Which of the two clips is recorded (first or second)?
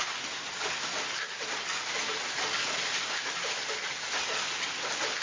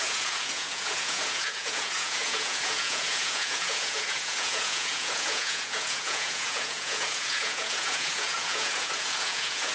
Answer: first